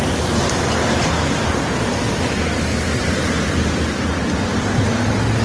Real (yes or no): yes